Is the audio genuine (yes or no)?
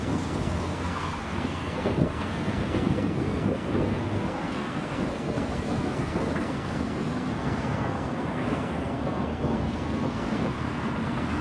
no